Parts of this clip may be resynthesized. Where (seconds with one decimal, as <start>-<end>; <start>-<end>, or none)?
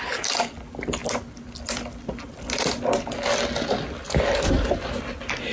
none